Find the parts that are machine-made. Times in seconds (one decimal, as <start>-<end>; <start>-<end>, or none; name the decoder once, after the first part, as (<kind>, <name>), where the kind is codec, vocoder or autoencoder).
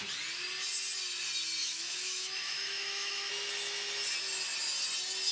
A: 1.6-3.3 (autoencoder, DAC-VAE)